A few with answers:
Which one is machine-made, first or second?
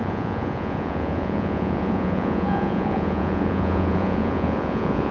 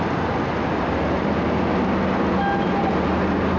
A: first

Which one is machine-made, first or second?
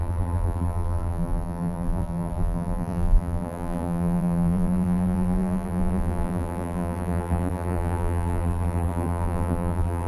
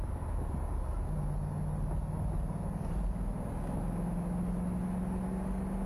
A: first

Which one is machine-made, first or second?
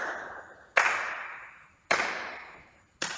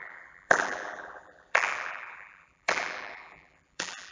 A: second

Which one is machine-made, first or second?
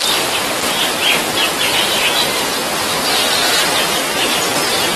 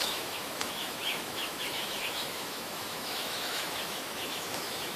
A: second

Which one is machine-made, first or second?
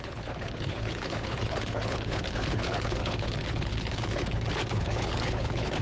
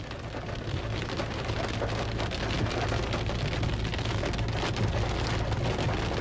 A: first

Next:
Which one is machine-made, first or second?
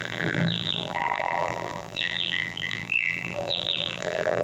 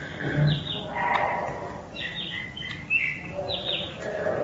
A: first